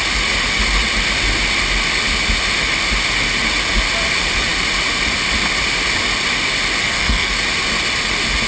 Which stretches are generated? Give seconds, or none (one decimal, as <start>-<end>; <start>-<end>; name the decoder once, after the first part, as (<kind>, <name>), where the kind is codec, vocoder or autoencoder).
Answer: 6.8-7.3 (codec, SNAC)